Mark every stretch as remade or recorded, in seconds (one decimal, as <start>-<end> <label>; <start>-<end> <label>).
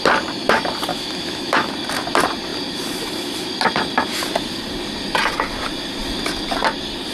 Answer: 0.0-0.9 recorded; 0.9-1.7 remade; 1.7-7.1 recorded